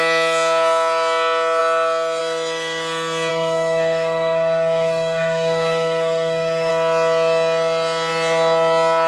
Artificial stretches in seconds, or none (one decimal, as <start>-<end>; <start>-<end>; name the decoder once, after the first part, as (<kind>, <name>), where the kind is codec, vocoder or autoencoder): 3.3-6.7 (codec, SNAC)